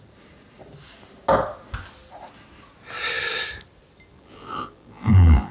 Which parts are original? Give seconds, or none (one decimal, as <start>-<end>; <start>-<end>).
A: 0.0-4.1